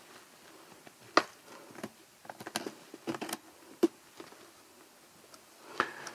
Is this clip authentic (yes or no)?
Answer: yes